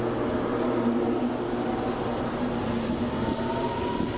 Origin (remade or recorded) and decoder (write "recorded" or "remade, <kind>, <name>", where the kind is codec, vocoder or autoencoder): recorded